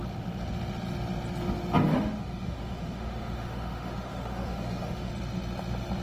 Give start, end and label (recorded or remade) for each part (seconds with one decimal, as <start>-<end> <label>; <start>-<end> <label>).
0.0-1.9 recorded; 1.9-5.1 remade; 5.1-6.0 recorded